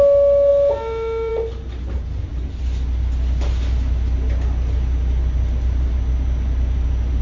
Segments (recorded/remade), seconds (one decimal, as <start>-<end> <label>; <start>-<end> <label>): 0.0-7.2 recorded